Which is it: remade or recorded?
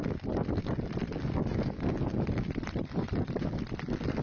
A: recorded